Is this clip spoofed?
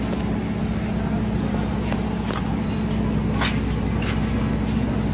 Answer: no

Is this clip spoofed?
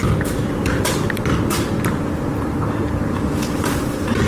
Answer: yes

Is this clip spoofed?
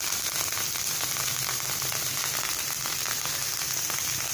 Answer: no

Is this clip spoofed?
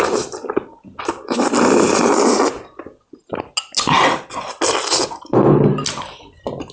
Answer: no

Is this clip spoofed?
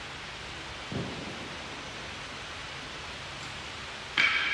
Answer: no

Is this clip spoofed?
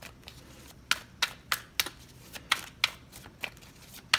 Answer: no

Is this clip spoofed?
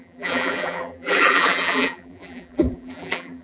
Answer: yes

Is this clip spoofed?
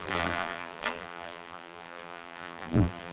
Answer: yes